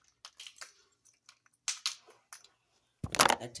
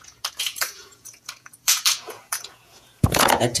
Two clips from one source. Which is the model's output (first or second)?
second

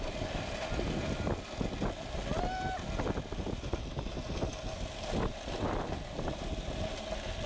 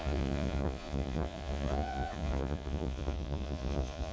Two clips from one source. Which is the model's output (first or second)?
second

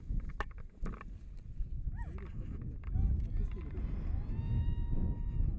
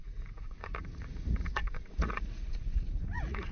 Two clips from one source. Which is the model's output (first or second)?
second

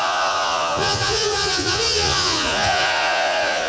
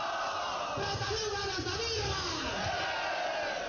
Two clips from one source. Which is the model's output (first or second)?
first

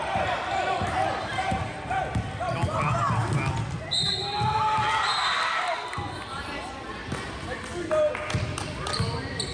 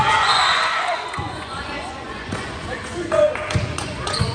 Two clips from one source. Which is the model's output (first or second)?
second